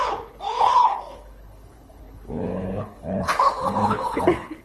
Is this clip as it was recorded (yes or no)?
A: no